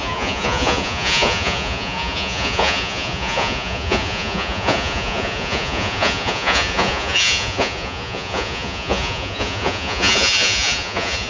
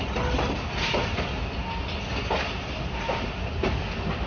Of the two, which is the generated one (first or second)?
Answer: first